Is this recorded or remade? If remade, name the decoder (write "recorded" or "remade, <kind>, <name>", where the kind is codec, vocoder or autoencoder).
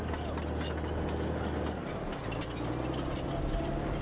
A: recorded